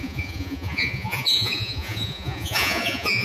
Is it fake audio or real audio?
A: fake